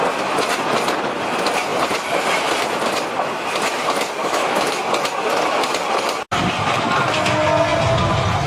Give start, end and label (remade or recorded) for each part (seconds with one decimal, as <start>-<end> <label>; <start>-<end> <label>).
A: 0.0-4.2 recorded; 4.2-4.8 remade; 4.8-8.5 recorded